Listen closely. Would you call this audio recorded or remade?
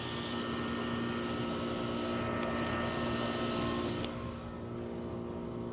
recorded